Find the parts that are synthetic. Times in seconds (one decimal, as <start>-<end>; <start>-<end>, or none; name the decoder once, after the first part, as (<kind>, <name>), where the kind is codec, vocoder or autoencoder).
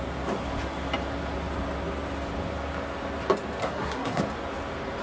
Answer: 3.6-4.2 (codec, SNAC)